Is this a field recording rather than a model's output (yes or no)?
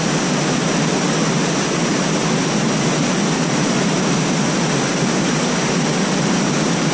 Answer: yes